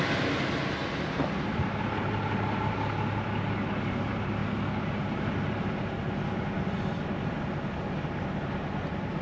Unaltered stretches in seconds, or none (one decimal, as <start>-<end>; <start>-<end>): 0.0-9.2